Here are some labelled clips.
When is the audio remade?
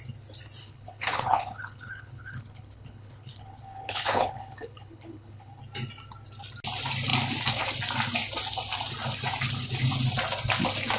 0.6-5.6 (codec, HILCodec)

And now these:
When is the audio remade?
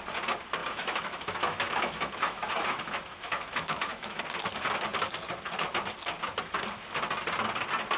0.6-4.2 (autoencoder, DAC-VAE)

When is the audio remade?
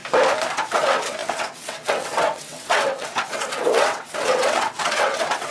0.7-5.5 (vocoder, WaveNeXt)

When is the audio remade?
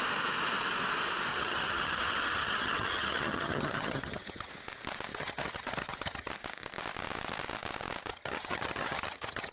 1.3-4.5 (vocoder, HiFi-GAN); 5.1-6.3; 8.1-9.5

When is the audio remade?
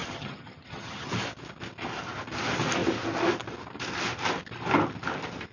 0.0-1.1 (vocoder, HiFi-GAN)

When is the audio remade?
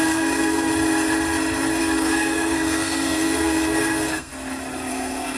0.0-0.7 (codec, SNAC); 1.8-4.3; 4.9-5.4